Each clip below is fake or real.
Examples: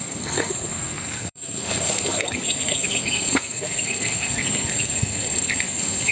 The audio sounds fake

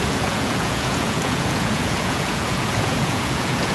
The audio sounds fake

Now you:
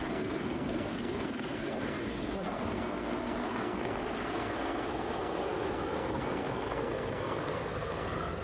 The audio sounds fake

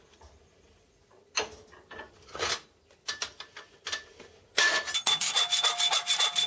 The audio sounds real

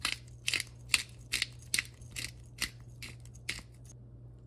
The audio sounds real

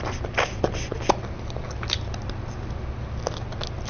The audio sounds real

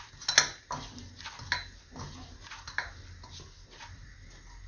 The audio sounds real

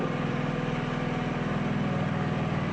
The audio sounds fake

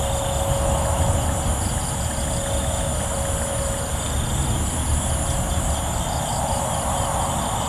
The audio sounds real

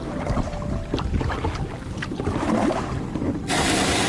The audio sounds real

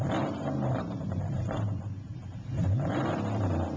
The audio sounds fake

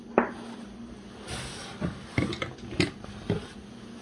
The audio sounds real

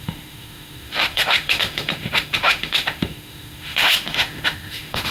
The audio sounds fake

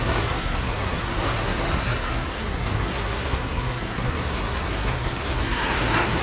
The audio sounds fake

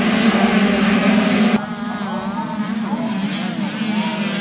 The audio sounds real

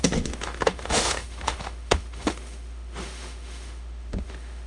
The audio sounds fake